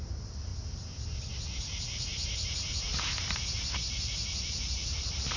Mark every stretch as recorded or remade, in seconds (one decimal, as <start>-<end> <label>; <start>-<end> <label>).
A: 0.0-0.5 remade; 0.5-1.3 recorded; 1.3-5.4 remade